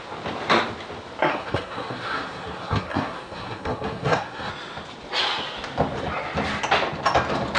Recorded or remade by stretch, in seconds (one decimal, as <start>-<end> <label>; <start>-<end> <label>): 0.0-1.3 recorded; 1.3-4.5 remade; 4.5-7.6 recorded